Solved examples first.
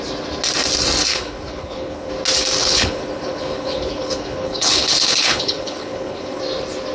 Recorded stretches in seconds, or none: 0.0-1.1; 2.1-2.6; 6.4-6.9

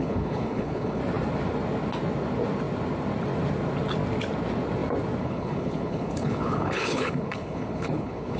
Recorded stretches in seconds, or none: 1.0-5.2

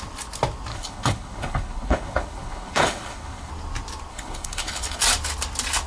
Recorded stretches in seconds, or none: 0.0-0.7; 3.5-4.1; 5.0-5.9

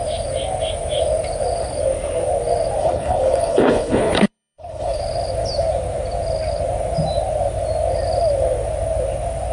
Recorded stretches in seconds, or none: 0.0-2.8; 5.0-9.5